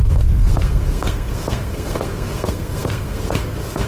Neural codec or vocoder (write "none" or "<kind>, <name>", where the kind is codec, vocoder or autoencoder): codec, SNAC